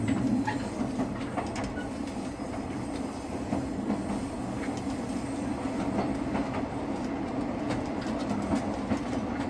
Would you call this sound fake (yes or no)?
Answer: no